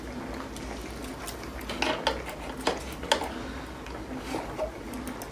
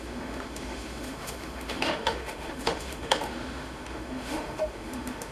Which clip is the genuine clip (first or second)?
first